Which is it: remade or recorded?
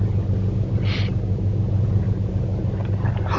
recorded